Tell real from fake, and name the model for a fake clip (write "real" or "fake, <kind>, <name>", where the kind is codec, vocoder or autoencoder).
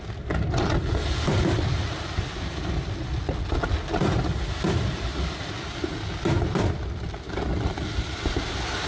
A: real